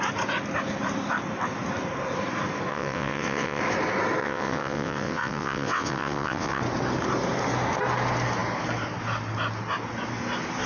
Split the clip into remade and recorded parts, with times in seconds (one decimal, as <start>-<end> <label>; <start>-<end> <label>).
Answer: 0.0-2.7 recorded; 2.7-3.6 remade; 3.6-4.2 recorded; 4.2-6.6 remade; 6.6-10.7 recorded